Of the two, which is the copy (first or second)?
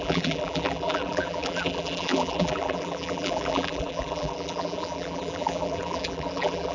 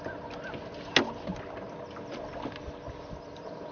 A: first